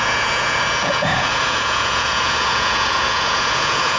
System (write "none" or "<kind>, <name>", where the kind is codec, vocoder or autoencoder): vocoder, Vocos